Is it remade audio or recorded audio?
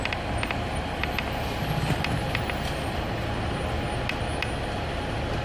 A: recorded